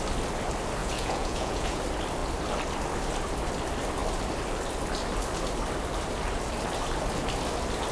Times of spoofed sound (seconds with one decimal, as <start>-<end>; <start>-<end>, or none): 0.8-1.8